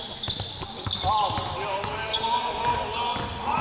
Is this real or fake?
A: real